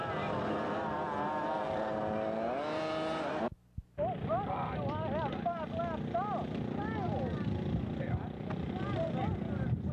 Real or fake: real